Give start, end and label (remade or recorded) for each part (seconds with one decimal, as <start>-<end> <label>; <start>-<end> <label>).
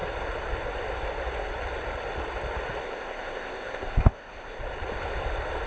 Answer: 0.0-2.8 recorded; 2.8-4.6 remade; 4.6-5.7 recorded